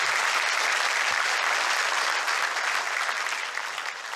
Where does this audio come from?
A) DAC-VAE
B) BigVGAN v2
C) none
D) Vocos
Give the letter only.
C